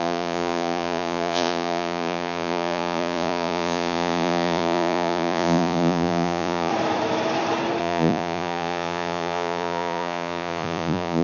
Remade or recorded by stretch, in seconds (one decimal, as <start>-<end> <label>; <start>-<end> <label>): 0.0-6.7 remade; 6.7-7.8 recorded; 7.8-11.2 remade